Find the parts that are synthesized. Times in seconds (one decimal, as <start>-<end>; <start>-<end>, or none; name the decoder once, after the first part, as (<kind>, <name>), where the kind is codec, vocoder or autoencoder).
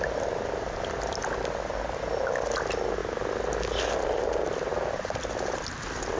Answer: none